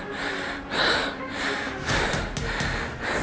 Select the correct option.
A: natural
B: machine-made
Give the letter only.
A